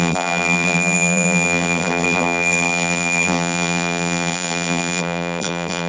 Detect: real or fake fake